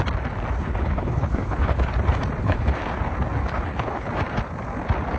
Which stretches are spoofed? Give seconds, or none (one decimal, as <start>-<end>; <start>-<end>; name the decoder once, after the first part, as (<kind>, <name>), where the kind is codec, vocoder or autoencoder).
0.6-1.9 (codec, HILCodec); 2.4-3.0; 3.4-4.1